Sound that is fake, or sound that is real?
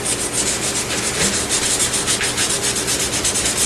real